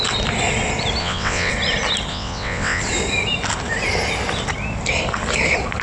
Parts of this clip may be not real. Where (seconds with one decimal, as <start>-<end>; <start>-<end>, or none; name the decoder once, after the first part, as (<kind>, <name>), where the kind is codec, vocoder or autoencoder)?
1.0-1.5 (vocoder, WaveNeXt); 2.1-2.8